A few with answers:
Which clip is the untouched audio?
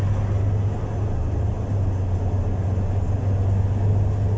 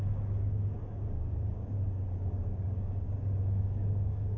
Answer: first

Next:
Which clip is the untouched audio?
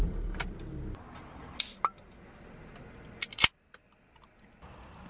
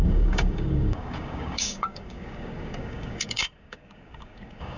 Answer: first